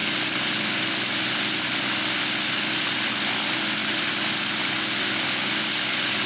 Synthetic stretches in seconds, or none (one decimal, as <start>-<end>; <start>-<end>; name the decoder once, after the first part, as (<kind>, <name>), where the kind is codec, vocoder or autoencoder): none